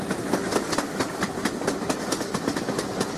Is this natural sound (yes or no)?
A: yes